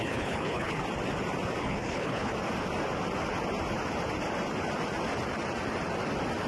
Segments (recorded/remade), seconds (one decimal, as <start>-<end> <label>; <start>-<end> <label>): 0.0-0.8 remade; 0.8-1.6 recorded; 1.6-2.3 remade; 2.3-6.5 recorded